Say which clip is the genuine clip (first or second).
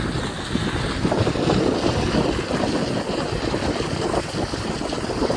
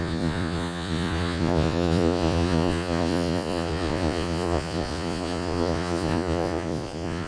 first